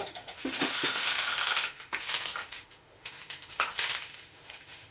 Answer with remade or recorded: remade